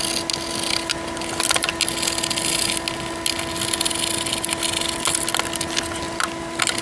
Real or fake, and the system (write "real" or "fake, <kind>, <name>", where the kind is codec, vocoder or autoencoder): real